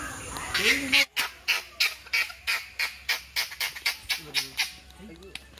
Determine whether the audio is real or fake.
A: real